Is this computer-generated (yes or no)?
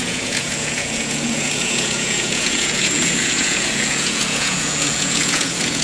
yes